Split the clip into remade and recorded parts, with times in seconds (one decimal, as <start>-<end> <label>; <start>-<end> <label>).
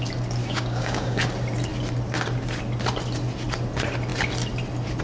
0.0-0.4 recorded; 0.4-1.2 remade; 1.2-5.0 recorded